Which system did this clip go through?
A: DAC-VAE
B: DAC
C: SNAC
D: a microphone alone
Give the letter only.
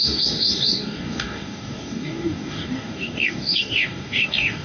B